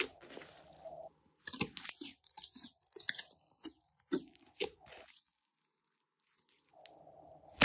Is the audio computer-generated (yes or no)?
no